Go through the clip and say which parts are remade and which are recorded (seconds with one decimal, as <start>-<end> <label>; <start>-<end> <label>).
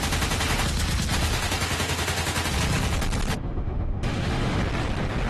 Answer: 0.0-1.3 recorded; 1.3-2.5 remade; 2.5-3.4 recorded; 3.4-4.6 remade; 4.6-5.3 recorded